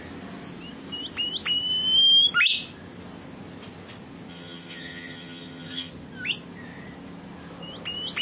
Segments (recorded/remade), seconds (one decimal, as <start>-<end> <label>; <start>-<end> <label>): 0.0-4.3 recorded; 4.3-5.9 remade; 5.9-8.2 recorded